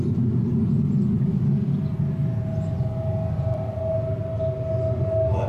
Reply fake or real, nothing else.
real